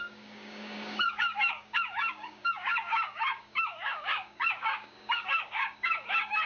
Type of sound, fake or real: fake